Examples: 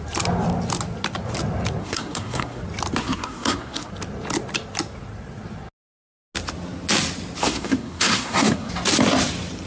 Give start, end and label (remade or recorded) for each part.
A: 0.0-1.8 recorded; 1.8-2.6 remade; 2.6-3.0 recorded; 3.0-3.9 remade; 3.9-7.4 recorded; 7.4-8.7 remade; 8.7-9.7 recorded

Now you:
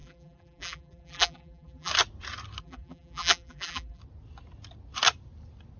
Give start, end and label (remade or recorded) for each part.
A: 0.0-1.9 remade; 1.9-2.6 recorded; 2.6-4.0 remade; 4.0-5.8 recorded

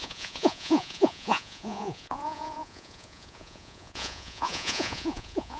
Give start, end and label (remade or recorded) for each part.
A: 0.0-5.6 remade

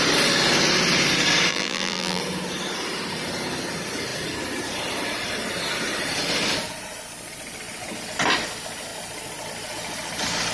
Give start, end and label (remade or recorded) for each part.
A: 0.0-1.5 recorded; 1.5-2.2 remade; 2.2-10.5 recorded

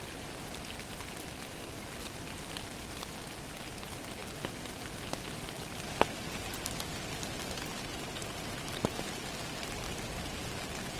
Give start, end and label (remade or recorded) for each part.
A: 0.0-11.0 recorded

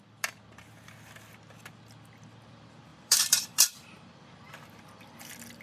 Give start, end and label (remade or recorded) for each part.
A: 0.0-2.9 recorded; 2.9-4.3 remade; 4.3-5.6 recorded

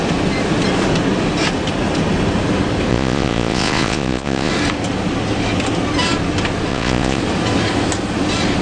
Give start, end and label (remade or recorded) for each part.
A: 0.0-2.9 recorded; 2.9-4.5 remade; 4.5-6.7 recorded; 6.7-7.2 remade; 7.2-8.6 recorded